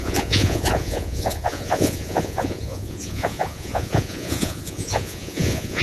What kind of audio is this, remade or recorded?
remade